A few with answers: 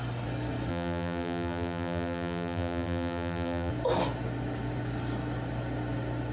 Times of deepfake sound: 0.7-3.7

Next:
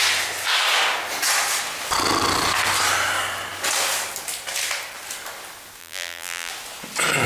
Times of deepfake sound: 5.8-6.5

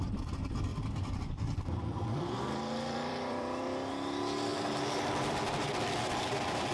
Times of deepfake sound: 0.7-3.9; 4.5-6.7

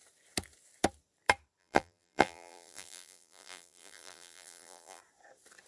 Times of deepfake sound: 1.6-5.0

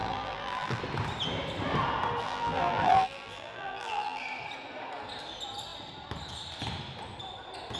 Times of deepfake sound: 0.0-0.8; 2.2-4.2

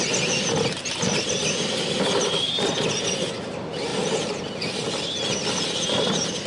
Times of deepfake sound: 3.9-5.0

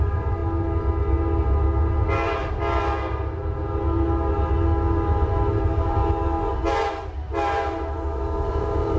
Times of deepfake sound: 0.0-0.4; 5.6-6.0; 8.5-9.0

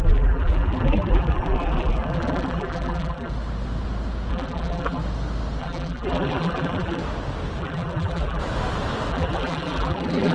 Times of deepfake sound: 0.0-3.3; 4.3-5.0; 5.6-7.0; 7.6-8.4; 9.1-10.3